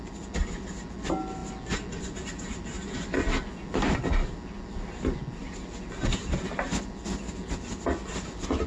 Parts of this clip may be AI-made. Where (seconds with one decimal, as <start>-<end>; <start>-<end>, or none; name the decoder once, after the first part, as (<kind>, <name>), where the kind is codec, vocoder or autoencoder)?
none